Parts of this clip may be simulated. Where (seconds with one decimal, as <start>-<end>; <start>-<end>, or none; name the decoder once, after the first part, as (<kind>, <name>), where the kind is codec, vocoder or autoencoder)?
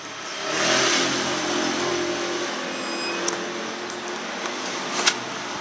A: none